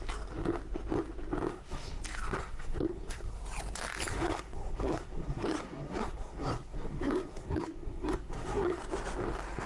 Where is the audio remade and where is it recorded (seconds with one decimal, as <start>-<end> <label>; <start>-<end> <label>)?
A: 0.0-1.5 recorded; 1.5-2.0 remade; 2.0-2.4 recorded; 2.4-3.4 remade; 3.4-4.1 recorded; 4.1-8.8 remade; 8.8-9.7 recorded